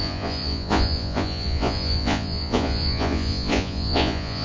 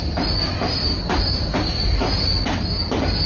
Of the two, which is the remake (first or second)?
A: first